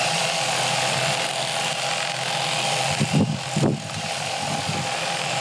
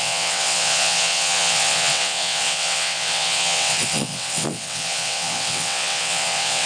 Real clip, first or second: first